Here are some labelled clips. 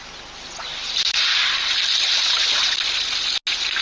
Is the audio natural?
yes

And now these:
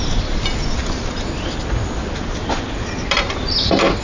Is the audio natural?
yes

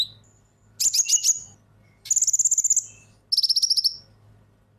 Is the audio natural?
yes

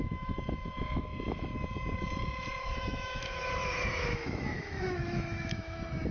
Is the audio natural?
no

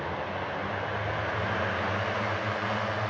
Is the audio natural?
yes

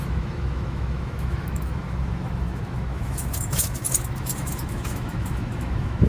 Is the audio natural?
no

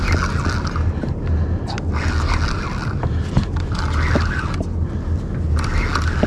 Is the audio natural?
yes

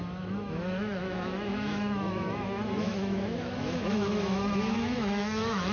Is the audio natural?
no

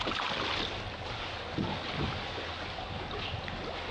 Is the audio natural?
yes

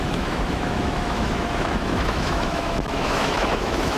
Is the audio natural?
no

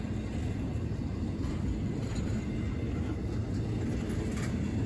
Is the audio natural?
yes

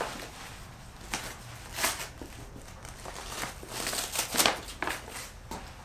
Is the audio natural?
yes